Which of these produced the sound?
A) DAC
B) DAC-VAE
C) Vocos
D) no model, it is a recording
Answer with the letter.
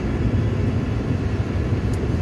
D